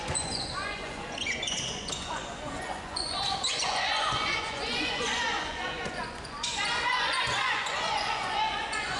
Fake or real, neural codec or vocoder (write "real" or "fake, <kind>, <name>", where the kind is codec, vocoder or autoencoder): fake, vocoder, Vocos